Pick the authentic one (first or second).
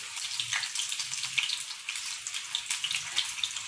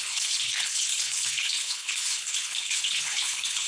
first